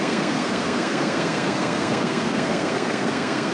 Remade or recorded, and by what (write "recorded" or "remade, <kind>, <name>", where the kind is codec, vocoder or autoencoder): remade, codec, SNAC